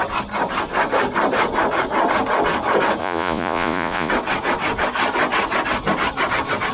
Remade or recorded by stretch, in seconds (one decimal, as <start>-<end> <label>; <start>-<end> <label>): 0.0-3.0 recorded; 3.0-4.1 remade; 4.1-6.7 recorded